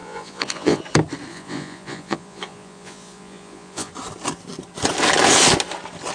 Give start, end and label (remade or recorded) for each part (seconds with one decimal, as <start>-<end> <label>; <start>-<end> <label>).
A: 0.0-0.8 remade; 0.8-1.3 recorded; 1.3-3.9 remade; 3.9-6.1 recorded

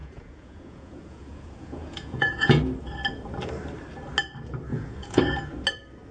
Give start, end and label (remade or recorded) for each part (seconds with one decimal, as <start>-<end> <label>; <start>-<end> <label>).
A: 0.0-2.6 remade; 2.6-4.7 recorded; 4.7-5.2 remade; 5.2-6.1 recorded

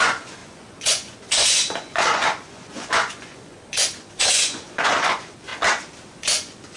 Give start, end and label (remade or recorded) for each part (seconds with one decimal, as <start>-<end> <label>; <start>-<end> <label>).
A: 0.0-5.5 remade; 5.5-6.1 recorded; 6.1-6.8 remade

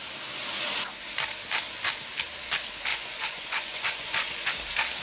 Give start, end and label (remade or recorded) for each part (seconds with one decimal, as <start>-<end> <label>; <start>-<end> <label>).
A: 0.0-2.9 recorded; 2.9-4.5 remade; 4.5-5.0 recorded

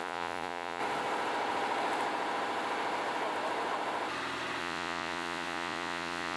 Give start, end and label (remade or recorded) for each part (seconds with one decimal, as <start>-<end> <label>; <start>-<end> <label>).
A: 0.0-0.8 remade; 0.8-4.6 recorded; 4.6-6.4 remade

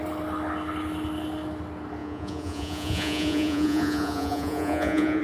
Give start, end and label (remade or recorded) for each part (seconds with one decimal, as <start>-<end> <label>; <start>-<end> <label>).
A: 0.0-2.0 recorded; 2.0-5.2 remade

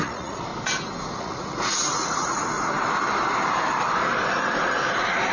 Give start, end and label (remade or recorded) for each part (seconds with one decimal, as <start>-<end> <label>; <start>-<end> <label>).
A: 0.0-0.5 remade; 0.5-1.2 recorded; 1.2-2.4 remade; 2.4-4.6 recorded; 4.6-5.3 remade